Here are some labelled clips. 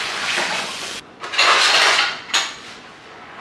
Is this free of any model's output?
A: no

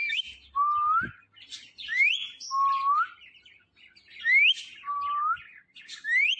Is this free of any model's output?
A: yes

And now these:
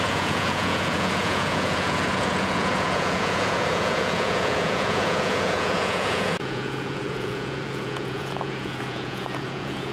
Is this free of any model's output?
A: no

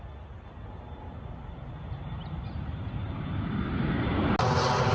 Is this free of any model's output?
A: yes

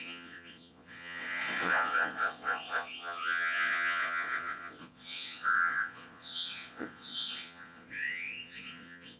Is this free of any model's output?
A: no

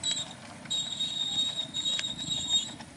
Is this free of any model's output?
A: yes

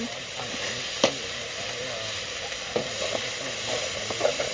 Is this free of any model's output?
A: yes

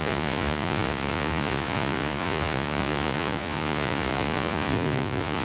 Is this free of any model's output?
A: no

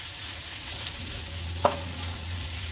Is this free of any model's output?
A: no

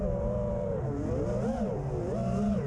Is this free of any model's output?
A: yes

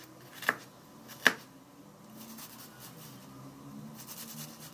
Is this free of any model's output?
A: yes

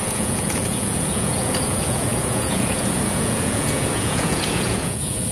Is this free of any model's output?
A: no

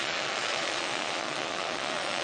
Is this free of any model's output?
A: no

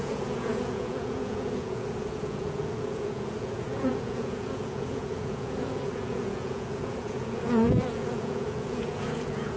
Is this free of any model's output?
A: no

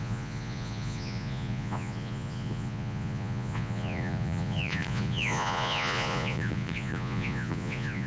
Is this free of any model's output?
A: no